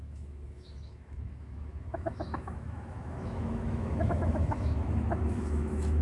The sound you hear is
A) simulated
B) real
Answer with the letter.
A